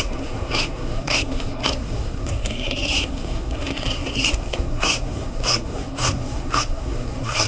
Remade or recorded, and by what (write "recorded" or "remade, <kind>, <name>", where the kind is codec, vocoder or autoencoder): remade, codec, SNAC